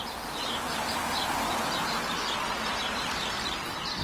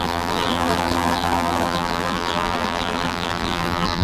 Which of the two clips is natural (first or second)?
first